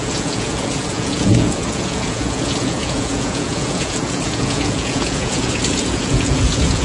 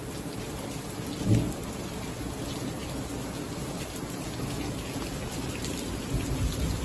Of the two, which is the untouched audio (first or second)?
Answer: second